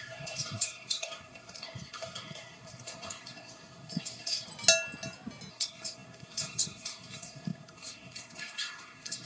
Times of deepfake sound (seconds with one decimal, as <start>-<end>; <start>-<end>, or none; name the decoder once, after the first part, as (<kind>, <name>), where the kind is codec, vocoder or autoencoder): 0.0-4.5 (codec, SNAC); 5.5-9.3

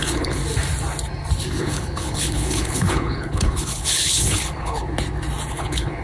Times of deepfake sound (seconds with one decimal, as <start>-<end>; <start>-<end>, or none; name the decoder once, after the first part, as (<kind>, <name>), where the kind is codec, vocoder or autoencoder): 0.0-0.4 (codec, HILCodec); 1.6-4.8; 5.5-6.0

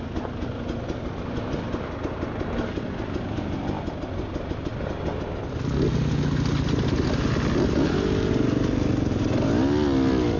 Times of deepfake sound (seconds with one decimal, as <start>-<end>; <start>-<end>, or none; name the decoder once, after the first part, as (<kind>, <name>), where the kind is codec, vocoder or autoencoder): none